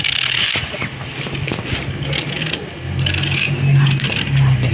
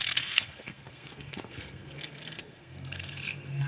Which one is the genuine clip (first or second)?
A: first